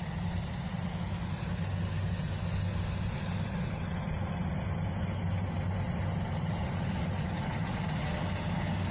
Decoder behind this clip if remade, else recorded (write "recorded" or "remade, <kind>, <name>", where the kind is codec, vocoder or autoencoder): recorded